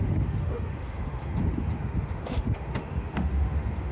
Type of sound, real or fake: fake